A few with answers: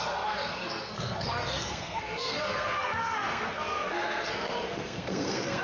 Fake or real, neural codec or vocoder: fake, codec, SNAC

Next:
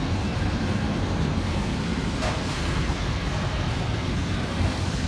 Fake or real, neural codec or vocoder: fake, codec, SNAC